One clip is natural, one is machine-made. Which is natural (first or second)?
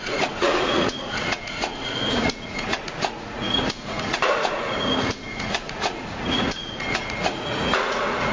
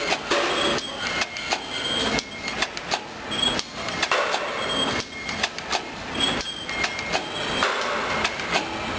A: second